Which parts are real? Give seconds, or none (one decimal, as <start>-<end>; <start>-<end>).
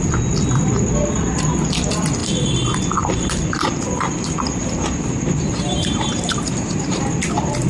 0.0-4.6; 7.0-7.7